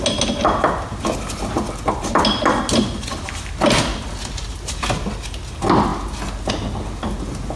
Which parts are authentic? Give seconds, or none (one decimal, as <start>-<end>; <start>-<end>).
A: 0.0-7.6